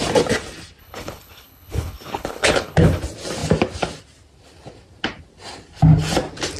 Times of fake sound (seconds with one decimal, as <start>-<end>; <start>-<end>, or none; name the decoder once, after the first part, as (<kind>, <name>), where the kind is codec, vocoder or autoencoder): 0.8-3.0 (codec, HILCodec)